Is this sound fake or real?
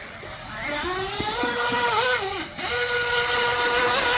real